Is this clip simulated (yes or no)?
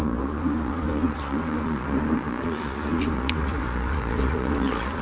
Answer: yes